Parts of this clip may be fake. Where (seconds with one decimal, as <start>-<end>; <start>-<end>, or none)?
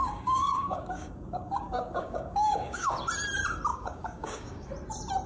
0.0-2.9; 3.7-4.7